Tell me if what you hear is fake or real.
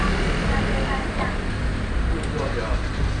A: real